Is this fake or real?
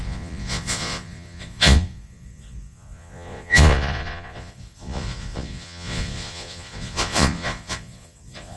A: fake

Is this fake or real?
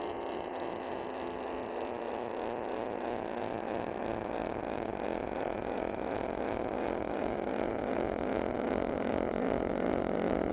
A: fake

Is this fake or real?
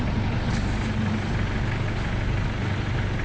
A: real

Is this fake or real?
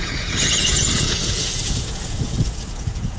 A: fake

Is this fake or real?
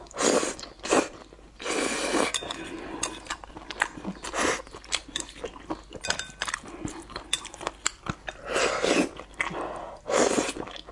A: real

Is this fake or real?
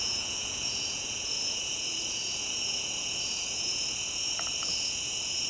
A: fake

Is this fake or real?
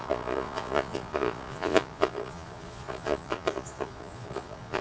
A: fake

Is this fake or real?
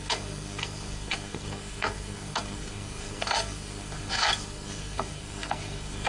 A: fake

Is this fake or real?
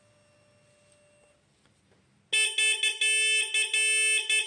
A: real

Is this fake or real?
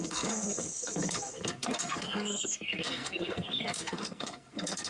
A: fake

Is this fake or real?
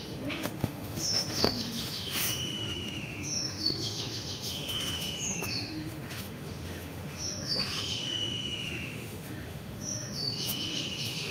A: fake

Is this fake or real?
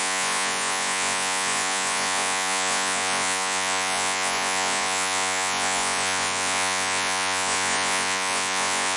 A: fake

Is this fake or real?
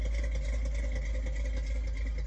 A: real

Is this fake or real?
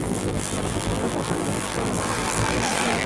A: fake